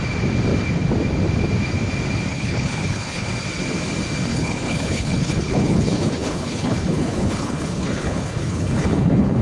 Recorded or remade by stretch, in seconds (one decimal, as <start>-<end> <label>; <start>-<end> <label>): 0.0-2.3 recorded; 2.3-3.3 remade; 3.3-4.3 recorded; 4.3-9.4 remade